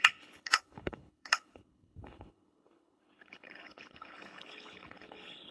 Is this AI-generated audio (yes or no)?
yes